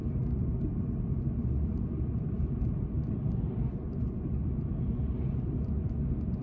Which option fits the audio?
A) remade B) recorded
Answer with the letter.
A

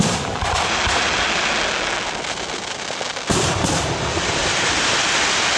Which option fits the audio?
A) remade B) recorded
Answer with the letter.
B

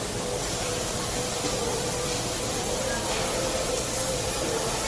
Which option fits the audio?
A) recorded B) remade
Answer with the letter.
A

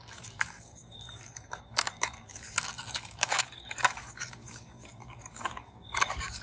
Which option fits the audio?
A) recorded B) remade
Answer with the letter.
B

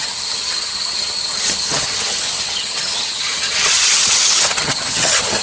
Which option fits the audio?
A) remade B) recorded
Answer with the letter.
A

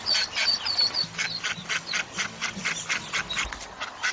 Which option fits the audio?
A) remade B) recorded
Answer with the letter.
B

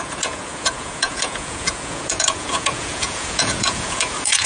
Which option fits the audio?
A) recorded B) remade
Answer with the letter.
B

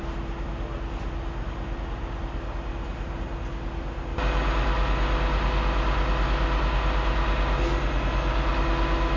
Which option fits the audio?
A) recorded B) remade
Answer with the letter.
A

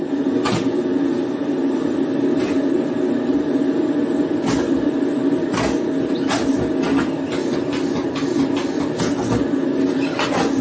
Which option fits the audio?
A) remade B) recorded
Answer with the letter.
B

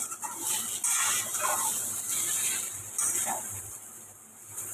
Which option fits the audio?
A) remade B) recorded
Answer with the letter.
B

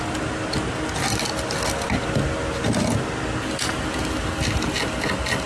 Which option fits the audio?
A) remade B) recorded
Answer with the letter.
B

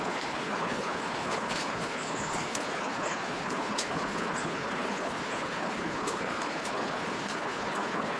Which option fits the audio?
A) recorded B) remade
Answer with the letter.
B